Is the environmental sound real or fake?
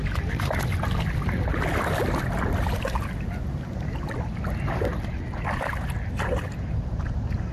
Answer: real